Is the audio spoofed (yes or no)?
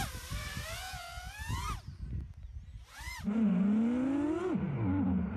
no